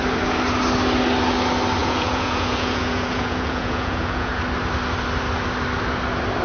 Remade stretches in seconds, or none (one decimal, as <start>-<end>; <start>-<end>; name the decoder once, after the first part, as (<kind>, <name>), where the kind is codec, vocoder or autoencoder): 1.8-4.4 (vocoder, Vocos)

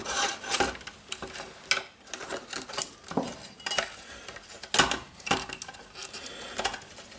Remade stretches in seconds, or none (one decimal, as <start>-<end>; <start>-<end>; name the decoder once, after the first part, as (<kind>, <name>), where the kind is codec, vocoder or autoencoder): 0.0-0.6 (vocoder, Vocos)

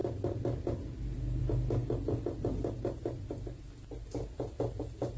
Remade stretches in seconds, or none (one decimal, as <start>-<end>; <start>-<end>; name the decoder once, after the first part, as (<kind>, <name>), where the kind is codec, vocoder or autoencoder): none

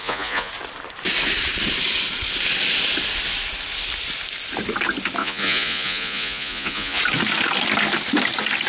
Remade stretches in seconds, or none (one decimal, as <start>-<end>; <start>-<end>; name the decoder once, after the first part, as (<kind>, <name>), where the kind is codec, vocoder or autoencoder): 0.0-0.5 (vocoder, Vocos); 5.2-7.0